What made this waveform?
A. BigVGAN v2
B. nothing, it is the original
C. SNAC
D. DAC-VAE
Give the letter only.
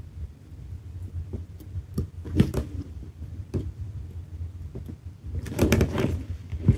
B